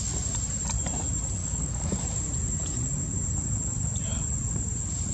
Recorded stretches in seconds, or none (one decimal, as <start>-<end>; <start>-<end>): 0.0-1.4; 2.0-5.1